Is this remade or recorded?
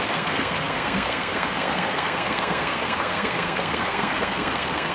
remade